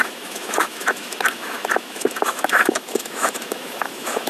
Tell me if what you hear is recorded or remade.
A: remade